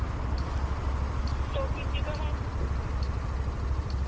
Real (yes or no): yes